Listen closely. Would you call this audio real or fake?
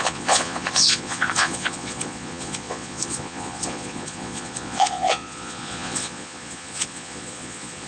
fake